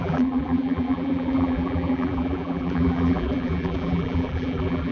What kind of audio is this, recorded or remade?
remade